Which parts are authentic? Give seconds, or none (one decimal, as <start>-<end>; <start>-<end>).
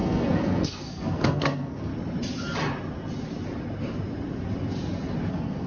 1.9-5.3